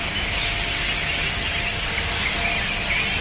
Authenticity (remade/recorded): recorded